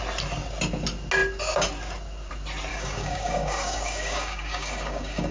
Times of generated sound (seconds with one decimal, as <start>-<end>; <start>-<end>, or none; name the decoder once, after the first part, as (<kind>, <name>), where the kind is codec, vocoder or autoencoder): 2.7-5.3 (codec, DAC)